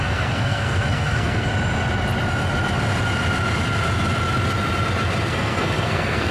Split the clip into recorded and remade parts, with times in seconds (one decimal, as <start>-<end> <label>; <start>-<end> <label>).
0.0-1.5 remade; 1.5-5.3 recorded; 5.3-6.3 remade